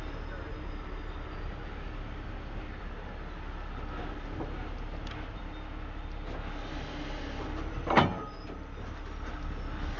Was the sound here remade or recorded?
recorded